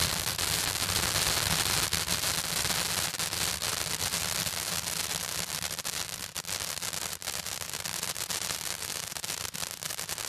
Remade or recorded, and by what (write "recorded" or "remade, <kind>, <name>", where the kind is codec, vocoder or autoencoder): recorded